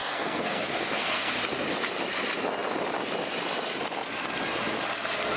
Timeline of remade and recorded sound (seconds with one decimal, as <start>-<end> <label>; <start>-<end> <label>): 0.0-1.3 remade; 1.3-5.4 recorded